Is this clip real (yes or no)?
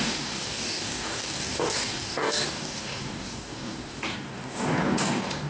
no